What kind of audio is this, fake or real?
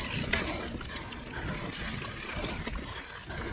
real